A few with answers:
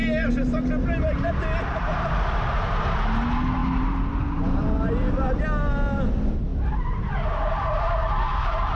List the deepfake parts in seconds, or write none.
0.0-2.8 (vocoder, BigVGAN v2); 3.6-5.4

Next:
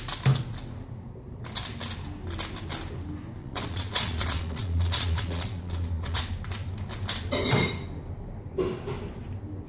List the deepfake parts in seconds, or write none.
3.4-6.2 (vocoder, Vocos)

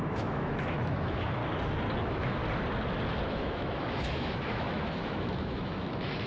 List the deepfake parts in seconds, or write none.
0.0-1.4 (autoencoder, DAC-VAE); 2.0-2.4; 3.3-6.3

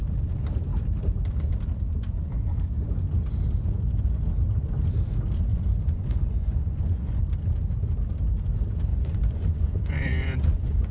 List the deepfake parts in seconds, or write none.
5.5-7.2 (vocoder, Vocos); 8.9-10.9

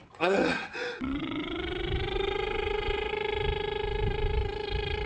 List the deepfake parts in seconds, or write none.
0.0-3.1 (vocoder, WaveNeXt)

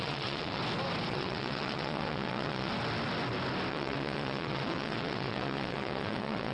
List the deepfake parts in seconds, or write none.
0.0-0.6 (vocoder, WaveNeXt); 1.1-2.7; 3.7-6.5

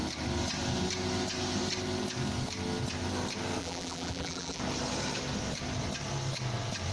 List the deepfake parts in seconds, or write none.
3.6-4.6 (vocoder, BigVGAN v2)